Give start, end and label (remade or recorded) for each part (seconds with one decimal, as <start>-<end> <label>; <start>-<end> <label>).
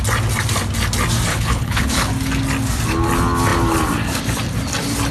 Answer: 0.0-1.3 recorded; 1.3-2.1 remade; 2.1-5.1 recorded